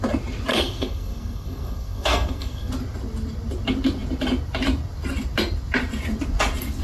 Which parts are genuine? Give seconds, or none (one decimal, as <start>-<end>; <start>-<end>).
0.0-0.5; 2.7-6.8